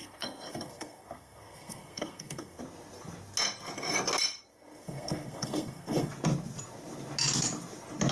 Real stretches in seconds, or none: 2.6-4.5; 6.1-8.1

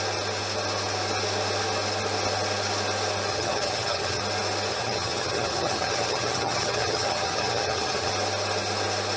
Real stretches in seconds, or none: 0.0-3.3; 4.2-4.7; 8.1-9.2